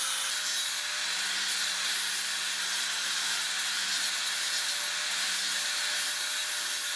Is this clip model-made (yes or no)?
no